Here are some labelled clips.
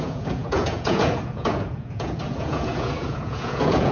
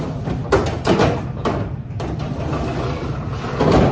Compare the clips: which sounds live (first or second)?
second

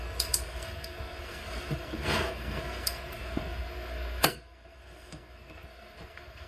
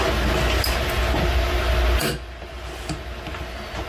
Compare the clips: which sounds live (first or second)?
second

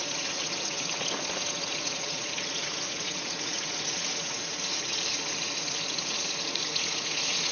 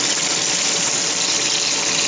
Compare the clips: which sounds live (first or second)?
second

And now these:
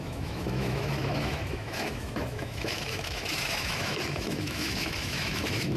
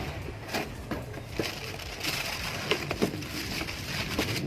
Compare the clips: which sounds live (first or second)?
second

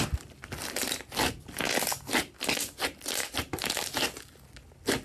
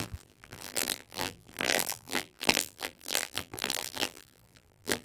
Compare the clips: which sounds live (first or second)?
first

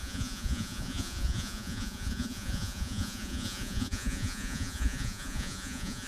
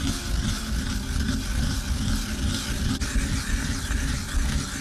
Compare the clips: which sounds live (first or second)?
second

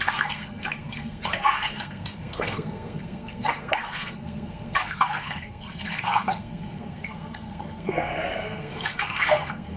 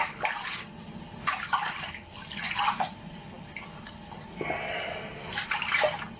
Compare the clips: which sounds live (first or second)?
second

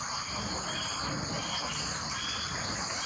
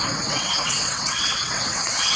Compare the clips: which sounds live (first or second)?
first